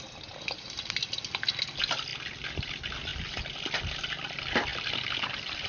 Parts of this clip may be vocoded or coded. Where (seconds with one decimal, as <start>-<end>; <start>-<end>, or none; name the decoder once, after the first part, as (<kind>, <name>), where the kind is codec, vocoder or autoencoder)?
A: none